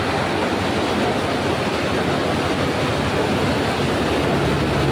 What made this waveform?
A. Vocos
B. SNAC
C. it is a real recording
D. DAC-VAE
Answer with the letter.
C